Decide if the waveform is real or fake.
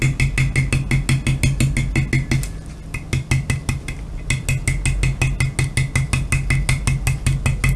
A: real